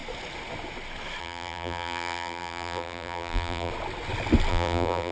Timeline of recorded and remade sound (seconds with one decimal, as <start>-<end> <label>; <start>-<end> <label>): 0.0-1.2 recorded; 1.2-3.7 remade; 3.7-4.5 recorded; 4.5-5.1 remade